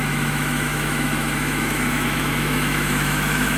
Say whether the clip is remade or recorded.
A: remade